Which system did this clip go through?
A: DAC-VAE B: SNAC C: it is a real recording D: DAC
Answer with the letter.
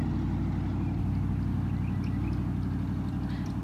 C